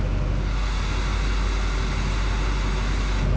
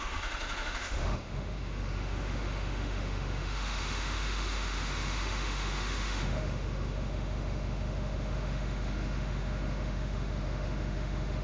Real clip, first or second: first